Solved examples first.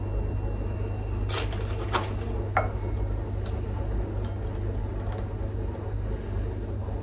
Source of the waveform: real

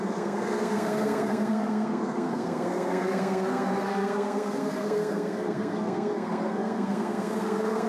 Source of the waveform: fake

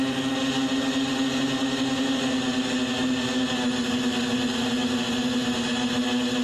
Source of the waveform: real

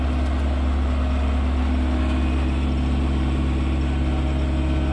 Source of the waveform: real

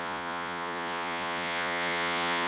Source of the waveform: fake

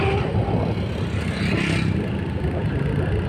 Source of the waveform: real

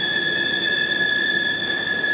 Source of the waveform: real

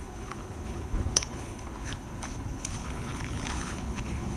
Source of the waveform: fake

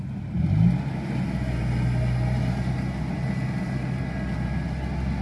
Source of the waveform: real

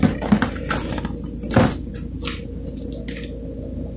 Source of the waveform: real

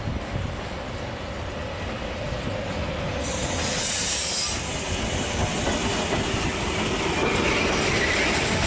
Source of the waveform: real